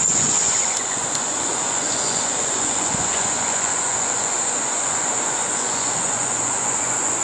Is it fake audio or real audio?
fake